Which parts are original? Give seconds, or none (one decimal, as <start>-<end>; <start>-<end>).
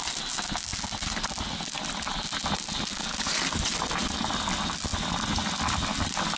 0.0-6.4